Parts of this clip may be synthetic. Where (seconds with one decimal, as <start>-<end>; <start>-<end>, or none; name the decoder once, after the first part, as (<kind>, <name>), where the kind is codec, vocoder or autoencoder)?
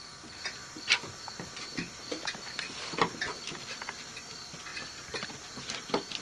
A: none